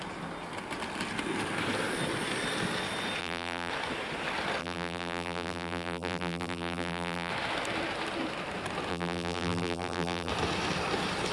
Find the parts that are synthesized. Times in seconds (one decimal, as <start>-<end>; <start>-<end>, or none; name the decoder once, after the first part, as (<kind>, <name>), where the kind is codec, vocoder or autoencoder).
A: 3.2-3.7 (vocoder, BigVGAN v2); 4.6-7.3; 8.9-10.3